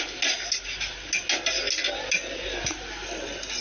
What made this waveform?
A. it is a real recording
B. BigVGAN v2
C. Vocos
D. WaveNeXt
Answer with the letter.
A